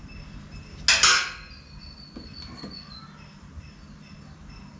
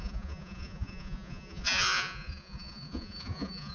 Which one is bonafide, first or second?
first